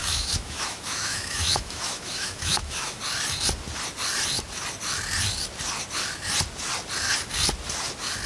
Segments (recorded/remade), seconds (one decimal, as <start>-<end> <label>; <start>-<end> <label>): 0.0-3.0 remade; 3.0-8.3 recorded

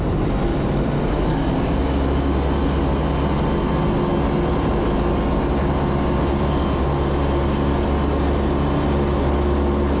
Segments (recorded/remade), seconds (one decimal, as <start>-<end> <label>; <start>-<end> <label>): 0.0-10.0 recorded

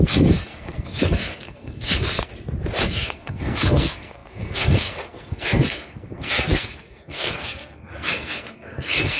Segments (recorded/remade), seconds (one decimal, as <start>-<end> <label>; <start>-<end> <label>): 0.0-2.3 remade; 2.3-2.8 recorded; 2.8-9.2 remade

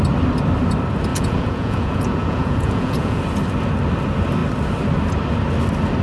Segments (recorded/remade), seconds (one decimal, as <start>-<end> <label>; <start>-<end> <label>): 0.0-1.1 recorded; 1.1-3.2 remade; 3.2-6.0 recorded

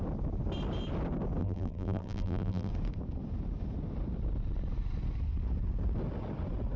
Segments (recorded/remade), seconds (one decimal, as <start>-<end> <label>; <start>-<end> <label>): 0.0-1.4 recorded; 1.4-2.7 remade; 2.7-6.8 recorded

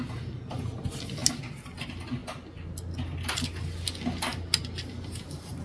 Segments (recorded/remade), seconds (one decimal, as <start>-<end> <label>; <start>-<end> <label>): 0.0-5.6 recorded

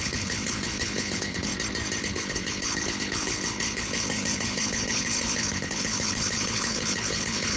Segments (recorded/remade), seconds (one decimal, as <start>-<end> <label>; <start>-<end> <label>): 0.0-1.5 remade; 1.5-2.0 recorded; 2.0-7.6 remade

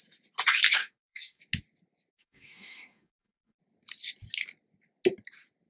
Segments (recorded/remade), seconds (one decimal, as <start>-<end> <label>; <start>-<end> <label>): 0.0-0.8 recorded; 0.8-1.4 remade; 1.4-2.1 recorded; 2.1-3.6 remade; 3.6-5.7 recorded